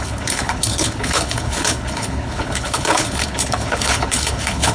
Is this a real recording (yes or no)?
no